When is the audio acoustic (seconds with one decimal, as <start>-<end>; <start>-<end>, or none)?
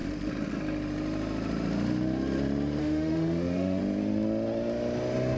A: 0.0-2.8; 3.8-5.4